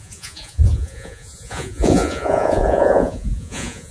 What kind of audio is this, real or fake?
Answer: fake